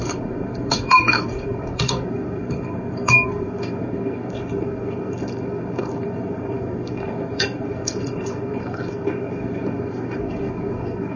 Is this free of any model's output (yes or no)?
no